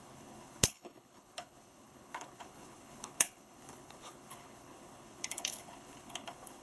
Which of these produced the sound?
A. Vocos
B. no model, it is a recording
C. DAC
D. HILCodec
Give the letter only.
D